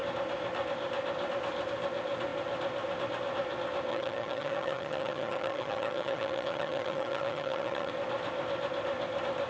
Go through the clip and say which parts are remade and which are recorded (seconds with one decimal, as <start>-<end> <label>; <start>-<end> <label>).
0.0-3.9 recorded; 3.9-7.9 remade; 7.9-9.5 recorded